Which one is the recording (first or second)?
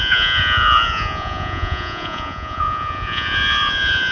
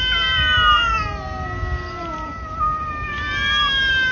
second